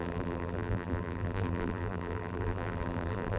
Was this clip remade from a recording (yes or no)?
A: yes